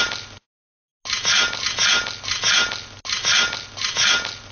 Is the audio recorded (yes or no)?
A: yes